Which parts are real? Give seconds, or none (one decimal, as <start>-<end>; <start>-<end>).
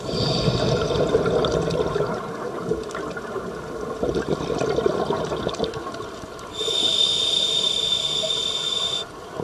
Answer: 0.0-6.9; 7.7-9.4